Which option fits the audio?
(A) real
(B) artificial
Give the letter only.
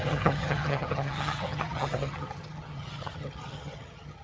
B